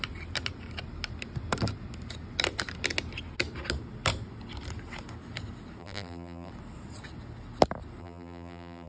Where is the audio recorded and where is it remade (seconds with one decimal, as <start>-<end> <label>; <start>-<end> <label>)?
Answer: 0.0-5.8 recorded; 5.8-6.5 remade; 6.5-8.0 recorded; 8.0-8.9 remade